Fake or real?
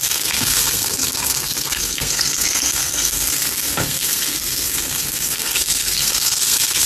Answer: fake